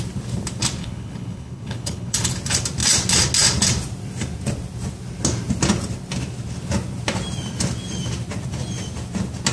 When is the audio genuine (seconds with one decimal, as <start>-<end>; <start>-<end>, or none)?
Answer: 0.0-0.8; 2.3-9.5